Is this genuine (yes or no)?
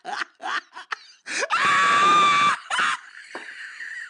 yes